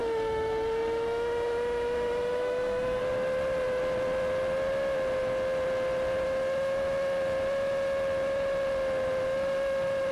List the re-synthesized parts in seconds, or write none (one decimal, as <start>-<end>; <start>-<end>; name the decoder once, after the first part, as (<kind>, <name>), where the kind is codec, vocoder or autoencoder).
0.0-3.0 (autoencoder, DAC-VAE)